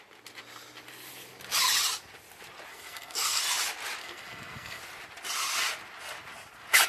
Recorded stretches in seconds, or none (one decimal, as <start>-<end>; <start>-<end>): 0.0-2.7; 3.4-4.0; 4.8-6.9